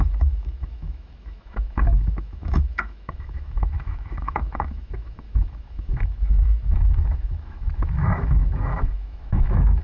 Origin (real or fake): fake